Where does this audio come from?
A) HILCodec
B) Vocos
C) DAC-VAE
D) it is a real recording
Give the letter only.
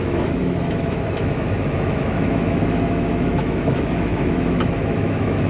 C